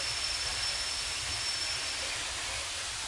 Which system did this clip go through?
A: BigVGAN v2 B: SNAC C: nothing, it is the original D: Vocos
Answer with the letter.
C